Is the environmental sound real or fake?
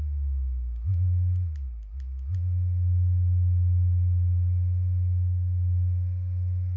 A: real